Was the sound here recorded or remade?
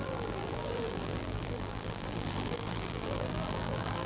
remade